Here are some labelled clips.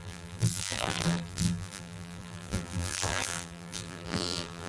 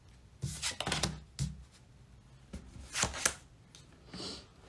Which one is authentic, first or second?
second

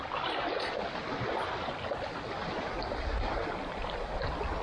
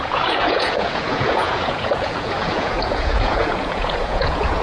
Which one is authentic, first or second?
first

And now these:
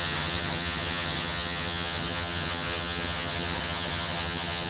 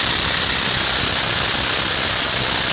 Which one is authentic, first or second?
second